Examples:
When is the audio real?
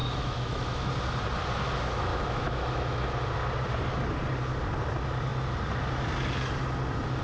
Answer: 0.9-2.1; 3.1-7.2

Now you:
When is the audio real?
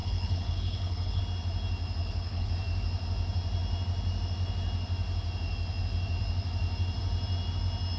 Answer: 1.2-2.0; 2.5-8.0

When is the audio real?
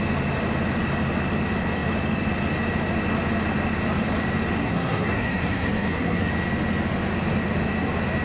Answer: 0.0-4.6; 6.3-8.2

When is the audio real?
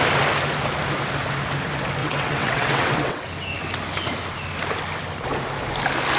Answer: 0.0-2.0; 3.2-6.2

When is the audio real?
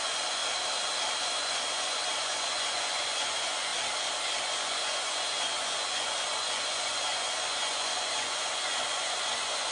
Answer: 0.4-1.2; 3.7-4.4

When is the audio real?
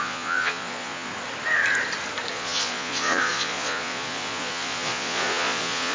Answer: 1.1-2.3